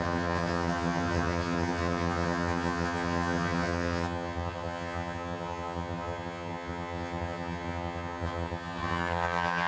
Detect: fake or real fake